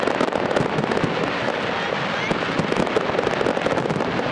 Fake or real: real